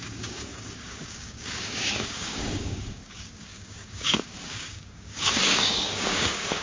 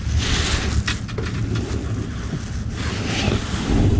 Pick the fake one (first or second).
first